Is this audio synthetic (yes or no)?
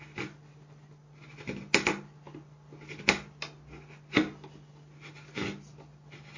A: no